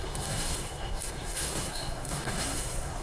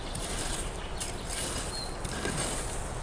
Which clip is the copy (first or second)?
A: first